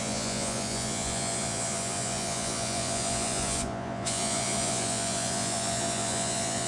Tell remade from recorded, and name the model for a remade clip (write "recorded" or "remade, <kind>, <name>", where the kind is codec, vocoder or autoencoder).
remade, vocoder, Vocos